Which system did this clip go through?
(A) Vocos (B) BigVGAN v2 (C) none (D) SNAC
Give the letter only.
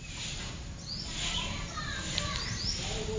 C